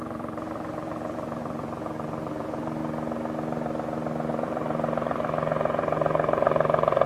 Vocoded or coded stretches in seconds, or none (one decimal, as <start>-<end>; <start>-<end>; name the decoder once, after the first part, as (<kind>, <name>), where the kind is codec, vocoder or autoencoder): 0.0-2.8 (vocoder, BigVGAN v2); 4.3-7.1